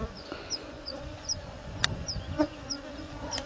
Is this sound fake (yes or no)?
yes